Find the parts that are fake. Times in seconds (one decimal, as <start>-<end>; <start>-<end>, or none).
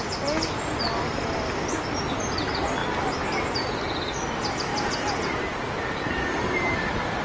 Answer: none